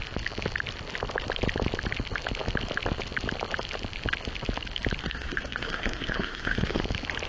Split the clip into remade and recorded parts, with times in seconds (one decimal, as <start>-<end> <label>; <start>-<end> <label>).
0.0-5.0 recorded; 5.0-6.8 remade; 6.8-7.3 recorded